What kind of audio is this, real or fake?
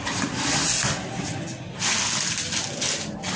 real